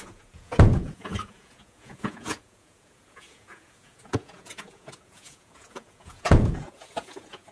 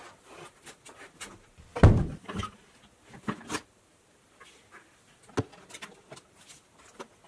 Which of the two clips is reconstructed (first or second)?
first